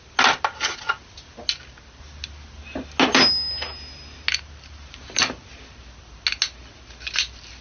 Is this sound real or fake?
real